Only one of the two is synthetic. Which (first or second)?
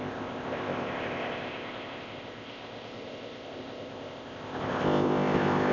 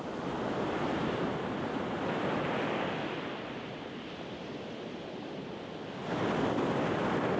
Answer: first